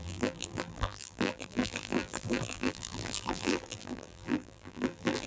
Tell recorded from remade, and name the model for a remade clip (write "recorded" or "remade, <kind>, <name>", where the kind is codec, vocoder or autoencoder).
remade, vocoder, BigVGAN v2